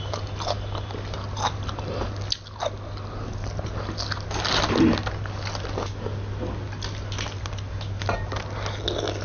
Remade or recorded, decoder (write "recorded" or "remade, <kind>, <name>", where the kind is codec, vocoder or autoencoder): recorded